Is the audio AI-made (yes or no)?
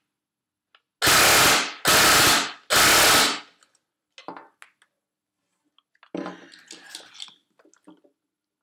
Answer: no